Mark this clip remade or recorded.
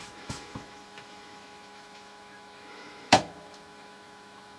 remade